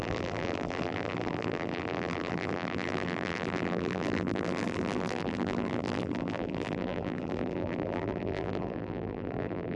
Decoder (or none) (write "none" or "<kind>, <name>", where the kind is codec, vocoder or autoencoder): vocoder, BigVGAN v2